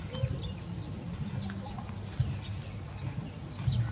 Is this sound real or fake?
real